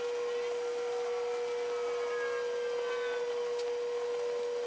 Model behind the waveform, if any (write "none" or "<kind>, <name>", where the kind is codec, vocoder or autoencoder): none